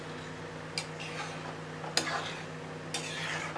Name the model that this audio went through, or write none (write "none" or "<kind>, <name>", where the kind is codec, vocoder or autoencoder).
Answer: none